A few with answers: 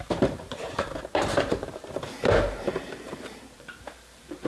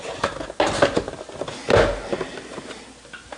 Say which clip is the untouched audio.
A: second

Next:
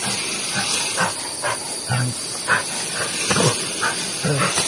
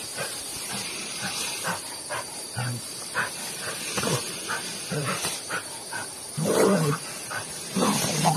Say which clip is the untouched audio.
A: first